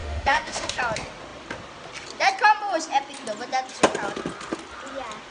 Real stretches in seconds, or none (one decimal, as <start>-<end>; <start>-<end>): 0.8-5.3